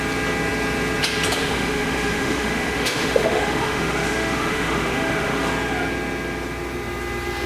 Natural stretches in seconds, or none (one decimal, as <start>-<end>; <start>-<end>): 0.0-1.4; 5.5-7.5